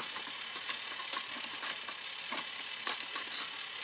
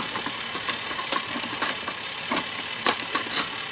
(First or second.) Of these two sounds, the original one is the first